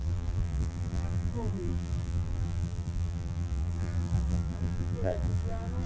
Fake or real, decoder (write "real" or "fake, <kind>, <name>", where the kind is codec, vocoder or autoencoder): fake, vocoder, BigVGAN v2